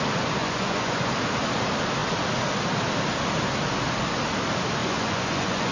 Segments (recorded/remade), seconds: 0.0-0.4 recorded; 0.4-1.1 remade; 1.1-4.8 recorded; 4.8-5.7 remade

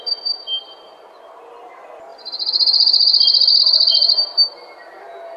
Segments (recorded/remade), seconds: 0.0-5.4 recorded

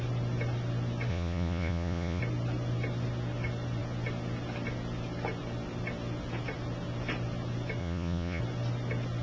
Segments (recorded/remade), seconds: 0.0-1.1 recorded; 1.1-2.2 remade; 2.2-7.8 recorded; 7.8-8.4 remade; 8.4-9.2 recorded

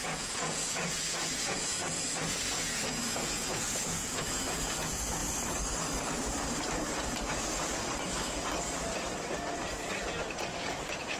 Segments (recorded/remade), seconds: 0.0-5.2 remade; 5.2-10.4 recorded; 10.4-11.2 remade

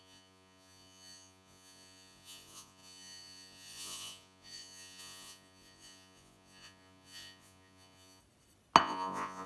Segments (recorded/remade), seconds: 0.0-8.2 remade; 8.2-8.8 recorded; 8.8-9.5 remade

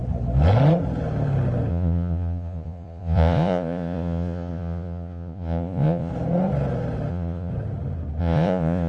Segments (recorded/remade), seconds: 0.0-1.7 recorded; 1.7-6.1 remade; 6.1-7.1 recorded; 7.1-7.5 remade; 7.5-8.2 recorded; 8.2-8.9 remade

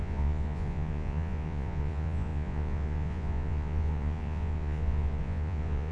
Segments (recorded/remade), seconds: 0.0-5.9 remade